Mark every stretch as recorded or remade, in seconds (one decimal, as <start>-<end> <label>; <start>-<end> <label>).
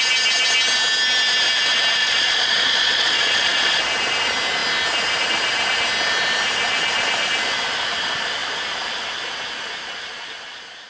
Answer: 0.0-2.0 recorded; 2.0-3.8 remade; 3.8-10.9 recorded